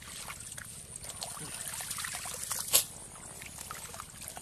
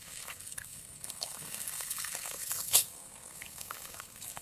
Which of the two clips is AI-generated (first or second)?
second